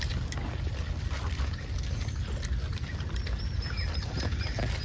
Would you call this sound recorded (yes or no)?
yes